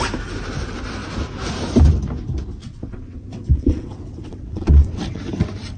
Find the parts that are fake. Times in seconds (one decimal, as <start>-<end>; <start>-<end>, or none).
2.6-5.2